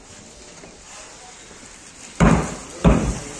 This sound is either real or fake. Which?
real